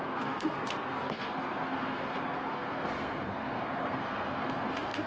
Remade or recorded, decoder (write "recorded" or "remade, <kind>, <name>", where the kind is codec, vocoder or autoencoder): remade, codec, SNAC